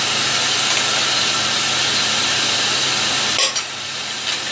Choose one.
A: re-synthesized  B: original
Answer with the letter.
B